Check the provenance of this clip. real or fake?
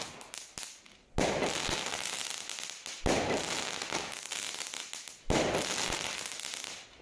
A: real